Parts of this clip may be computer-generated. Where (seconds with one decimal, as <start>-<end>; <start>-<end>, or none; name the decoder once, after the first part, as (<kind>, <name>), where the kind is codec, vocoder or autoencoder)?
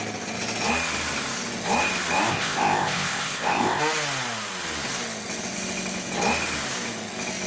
2.3-3.8 (codec, ZipCodec)